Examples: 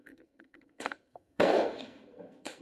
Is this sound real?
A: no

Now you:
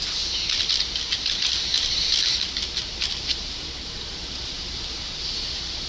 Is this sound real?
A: yes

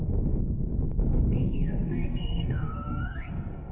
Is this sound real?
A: no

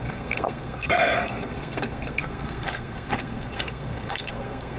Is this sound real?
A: no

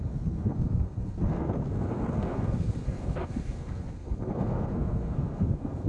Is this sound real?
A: no